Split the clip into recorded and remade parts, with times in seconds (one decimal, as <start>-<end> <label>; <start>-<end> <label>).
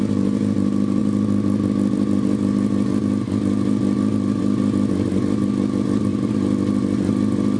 0.0-7.6 recorded